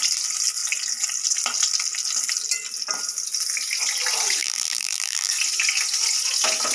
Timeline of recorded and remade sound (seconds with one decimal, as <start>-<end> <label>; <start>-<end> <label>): 0.0-4.4 recorded; 4.4-5.3 remade; 5.3-6.7 recorded